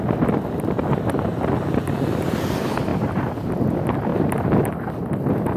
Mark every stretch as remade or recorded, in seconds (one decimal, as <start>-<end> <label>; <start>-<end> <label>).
0.0-2.9 recorded; 2.9-3.5 remade; 3.5-4.1 recorded; 4.1-4.6 remade; 4.6-5.6 recorded